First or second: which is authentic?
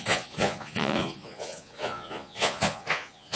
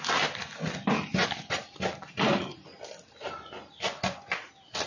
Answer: second